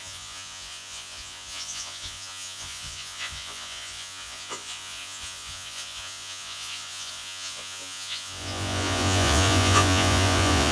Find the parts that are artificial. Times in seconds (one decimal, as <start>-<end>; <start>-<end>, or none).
0.0-10.7